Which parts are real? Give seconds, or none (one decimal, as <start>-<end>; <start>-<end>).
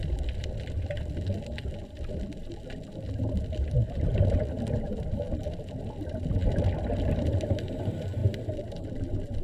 0.0-9.4